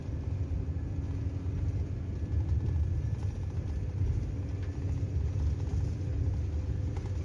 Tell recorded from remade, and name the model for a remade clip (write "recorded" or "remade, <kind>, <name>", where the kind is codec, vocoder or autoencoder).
recorded